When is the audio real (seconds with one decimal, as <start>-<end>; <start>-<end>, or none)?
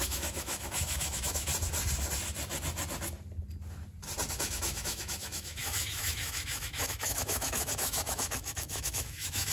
1.5-4.3